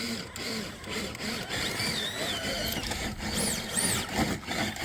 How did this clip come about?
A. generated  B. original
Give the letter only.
B